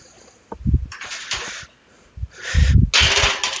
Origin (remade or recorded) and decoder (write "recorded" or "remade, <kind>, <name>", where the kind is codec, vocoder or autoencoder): recorded